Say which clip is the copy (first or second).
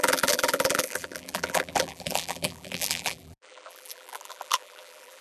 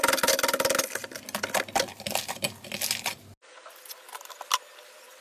first